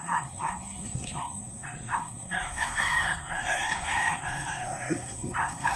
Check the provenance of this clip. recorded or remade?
remade